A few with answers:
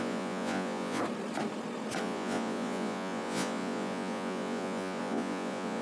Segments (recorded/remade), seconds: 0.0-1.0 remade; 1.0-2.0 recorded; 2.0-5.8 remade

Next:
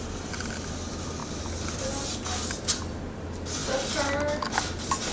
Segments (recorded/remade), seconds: 0.0-5.1 recorded

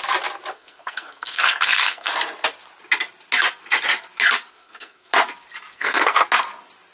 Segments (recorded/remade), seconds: 0.0-0.5 recorded; 0.5-2.1 remade; 2.1-4.5 recorded; 4.5-5.1 remade; 5.1-5.7 recorded; 5.7-6.2 remade; 6.2-6.9 recorded

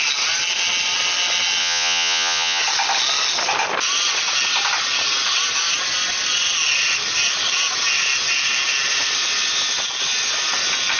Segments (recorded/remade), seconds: 0.0-1.6 recorded; 1.6-2.6 remade; 2.6-11.0 recorded